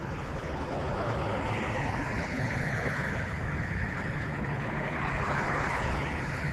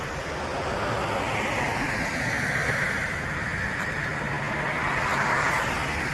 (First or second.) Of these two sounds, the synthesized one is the first